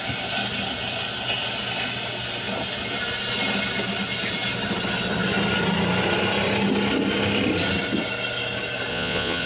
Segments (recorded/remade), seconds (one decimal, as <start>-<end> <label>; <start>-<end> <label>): 0.0-8.9 recorded; 8.9-9.5 remade